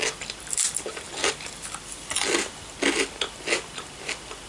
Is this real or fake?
real